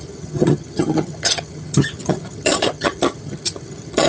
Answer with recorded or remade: remade